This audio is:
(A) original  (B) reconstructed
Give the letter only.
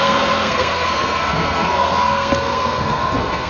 B